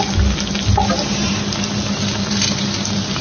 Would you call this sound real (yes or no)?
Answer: yes